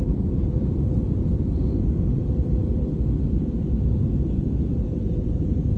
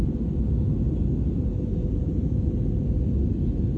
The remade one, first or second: first